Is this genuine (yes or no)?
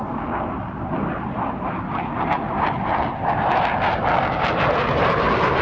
yes